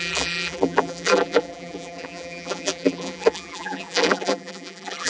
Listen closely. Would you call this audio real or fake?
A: fake